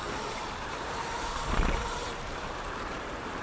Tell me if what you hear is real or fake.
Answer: fake